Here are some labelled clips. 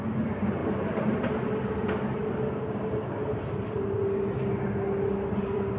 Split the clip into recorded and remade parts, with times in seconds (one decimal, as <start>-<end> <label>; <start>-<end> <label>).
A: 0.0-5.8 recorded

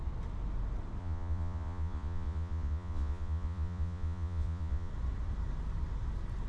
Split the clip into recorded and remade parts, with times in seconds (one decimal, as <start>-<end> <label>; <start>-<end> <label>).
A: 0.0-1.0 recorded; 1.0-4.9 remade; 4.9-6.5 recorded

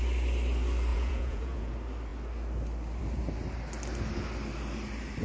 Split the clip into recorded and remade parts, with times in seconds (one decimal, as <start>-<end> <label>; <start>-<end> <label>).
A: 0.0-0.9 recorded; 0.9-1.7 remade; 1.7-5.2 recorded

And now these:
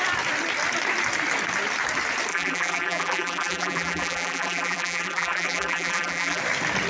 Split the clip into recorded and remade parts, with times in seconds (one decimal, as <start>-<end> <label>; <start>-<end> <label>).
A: 0.0-2.3 recorded; 2.3-6.4 remade; 6.4-6.9 recorded

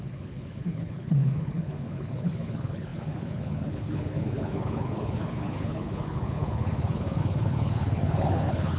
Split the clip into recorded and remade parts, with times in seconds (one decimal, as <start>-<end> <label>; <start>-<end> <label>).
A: 0.0-8.8 remade